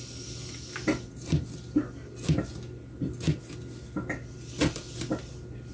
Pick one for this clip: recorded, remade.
recorded